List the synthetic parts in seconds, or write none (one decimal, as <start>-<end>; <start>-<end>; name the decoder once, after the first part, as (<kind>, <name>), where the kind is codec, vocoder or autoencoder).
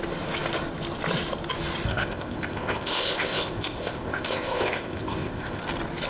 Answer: 1.9-5.6 (codec, ZipCodec)